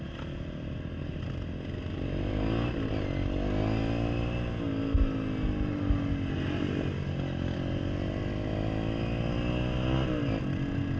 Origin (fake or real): real